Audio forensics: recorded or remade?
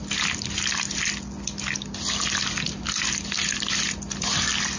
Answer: recorded